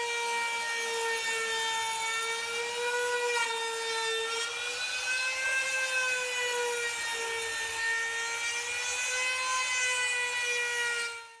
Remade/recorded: recorded